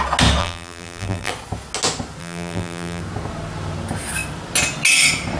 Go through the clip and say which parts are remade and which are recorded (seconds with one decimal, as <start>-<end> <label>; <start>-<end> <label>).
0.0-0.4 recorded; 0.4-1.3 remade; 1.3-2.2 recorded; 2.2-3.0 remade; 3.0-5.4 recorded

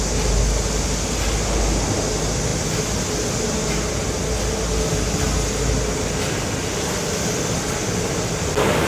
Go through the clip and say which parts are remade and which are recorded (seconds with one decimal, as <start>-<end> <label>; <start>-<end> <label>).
0.0-8.9 recorded

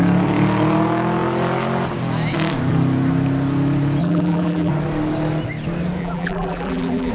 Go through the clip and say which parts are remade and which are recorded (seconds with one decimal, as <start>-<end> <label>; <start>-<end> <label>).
0.0-4.0 recorded; 4.0-4.7 remade; 4.7-6.0 recorded; 6.0-7.1 remade